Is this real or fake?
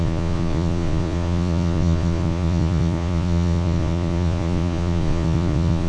fake